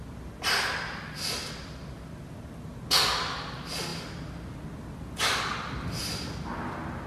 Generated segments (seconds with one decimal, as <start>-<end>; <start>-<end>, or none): none